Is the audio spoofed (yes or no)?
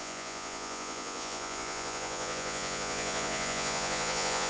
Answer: yes